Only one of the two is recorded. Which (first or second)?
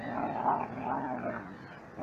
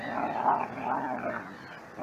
first